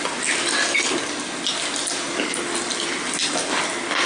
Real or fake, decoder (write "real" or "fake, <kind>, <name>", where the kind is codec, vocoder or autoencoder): real